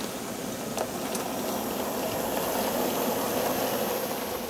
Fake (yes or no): no